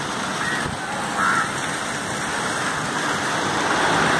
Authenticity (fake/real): real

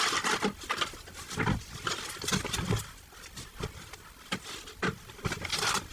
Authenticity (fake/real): real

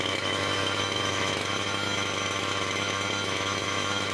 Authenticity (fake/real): fake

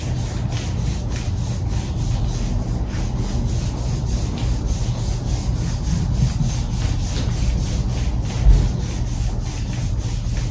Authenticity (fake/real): real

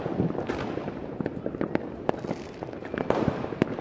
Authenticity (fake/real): real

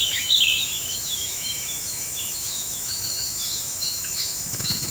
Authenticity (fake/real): fake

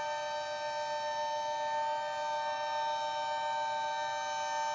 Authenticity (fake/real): real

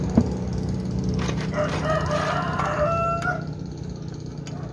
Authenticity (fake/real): real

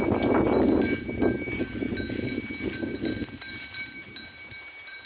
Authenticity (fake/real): real